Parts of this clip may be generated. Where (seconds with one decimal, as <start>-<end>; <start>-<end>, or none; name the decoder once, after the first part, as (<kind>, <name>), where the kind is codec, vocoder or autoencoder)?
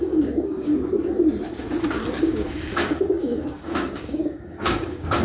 0.0-0.7 (codec, DAC); 2.2-5.2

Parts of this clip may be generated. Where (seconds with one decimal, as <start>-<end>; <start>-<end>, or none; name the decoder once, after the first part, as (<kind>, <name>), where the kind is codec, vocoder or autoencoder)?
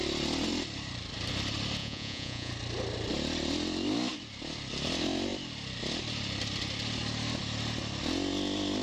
1.8-2.5 (vocoder, Vocos)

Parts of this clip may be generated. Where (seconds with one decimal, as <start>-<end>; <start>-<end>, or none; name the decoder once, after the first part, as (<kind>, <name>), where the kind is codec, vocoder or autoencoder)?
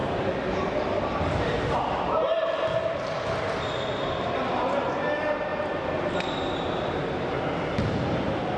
0.0-4.9 (vocoder, BigVGAN v2); 5.5-8.6